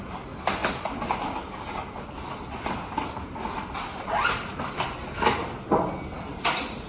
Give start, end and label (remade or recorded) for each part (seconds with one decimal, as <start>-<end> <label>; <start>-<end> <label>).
0.0-6.9 recorded